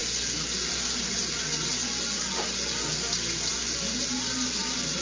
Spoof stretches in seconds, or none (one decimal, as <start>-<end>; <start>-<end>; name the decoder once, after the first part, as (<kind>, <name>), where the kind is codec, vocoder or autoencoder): none